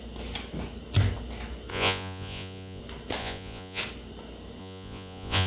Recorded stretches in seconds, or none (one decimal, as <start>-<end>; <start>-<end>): 0.0-1.7; 2.8-3.2; 3.8-4.6